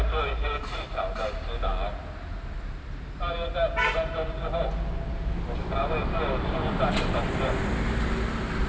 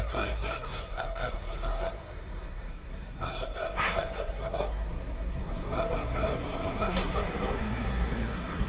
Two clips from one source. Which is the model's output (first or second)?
second